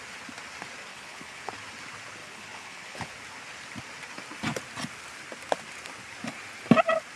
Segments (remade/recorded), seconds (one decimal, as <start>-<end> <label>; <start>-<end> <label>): 0.0-0.9 recorded; 0.9-1.5 remade; 1.5-2.2 recorded; 2.2-3.1 remade; 3.1-7.2 recorded